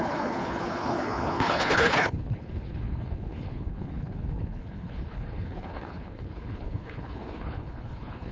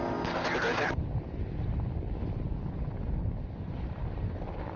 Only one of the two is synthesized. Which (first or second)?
first